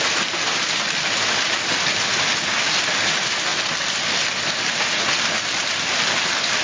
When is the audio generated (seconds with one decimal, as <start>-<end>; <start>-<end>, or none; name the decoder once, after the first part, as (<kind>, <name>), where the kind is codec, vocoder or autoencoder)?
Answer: none

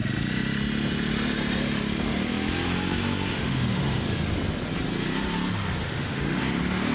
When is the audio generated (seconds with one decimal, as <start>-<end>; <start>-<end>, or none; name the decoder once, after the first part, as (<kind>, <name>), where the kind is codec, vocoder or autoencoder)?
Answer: 3.3-4.0 (autoencoder, DAC-VAE); 5.8-6.4

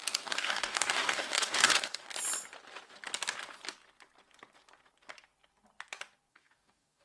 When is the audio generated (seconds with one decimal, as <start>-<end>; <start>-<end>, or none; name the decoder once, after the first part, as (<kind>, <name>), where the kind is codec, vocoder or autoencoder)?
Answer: 0.0-2.1 (codec, DAC); 6.3-7.0

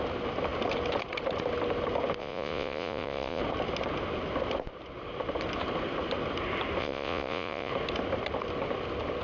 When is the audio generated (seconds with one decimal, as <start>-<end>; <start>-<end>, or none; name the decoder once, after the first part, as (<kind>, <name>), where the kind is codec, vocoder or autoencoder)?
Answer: 2.2-3.4 (vocoder, Vocos); 6.8-7.7